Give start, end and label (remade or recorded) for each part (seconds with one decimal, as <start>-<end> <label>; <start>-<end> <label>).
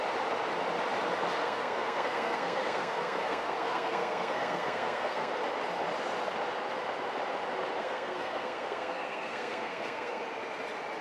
0.0-1.4 recorded; 1.4-5.3 remade; 5.3-7.8 recorded; 7.8-10.2 remade; 10.2-11.0 recorded